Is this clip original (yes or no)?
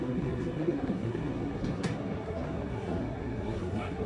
no